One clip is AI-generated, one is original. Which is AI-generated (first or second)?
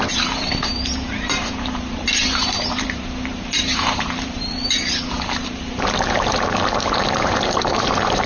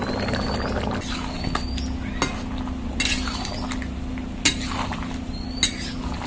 first